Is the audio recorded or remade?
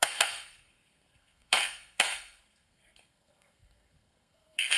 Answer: remade